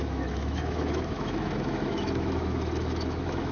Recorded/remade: remade